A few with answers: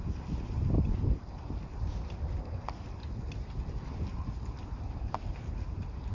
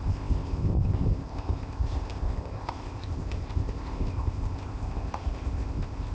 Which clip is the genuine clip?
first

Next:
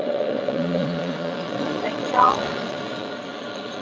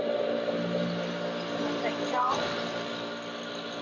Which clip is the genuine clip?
second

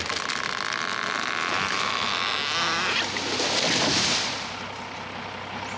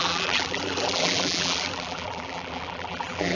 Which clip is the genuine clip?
first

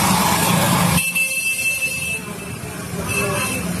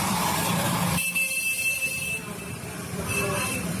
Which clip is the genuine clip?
first